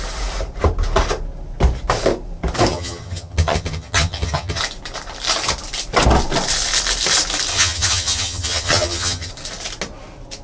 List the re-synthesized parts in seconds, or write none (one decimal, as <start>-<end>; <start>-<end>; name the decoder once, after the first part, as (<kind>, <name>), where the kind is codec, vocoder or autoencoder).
2.7-4.6 (vocoder, HiFi-GAN); 7.5-9.3